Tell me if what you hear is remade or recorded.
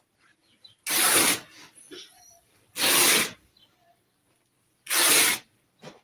recorded